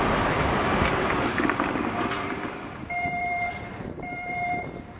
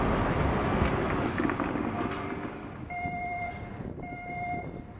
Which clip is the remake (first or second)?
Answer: first